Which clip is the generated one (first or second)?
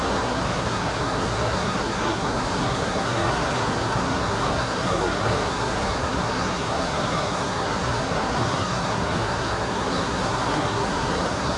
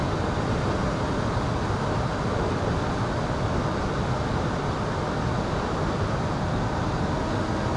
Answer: first